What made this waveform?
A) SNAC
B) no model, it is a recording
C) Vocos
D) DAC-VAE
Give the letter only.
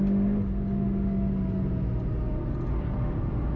B